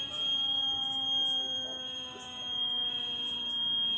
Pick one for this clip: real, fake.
fake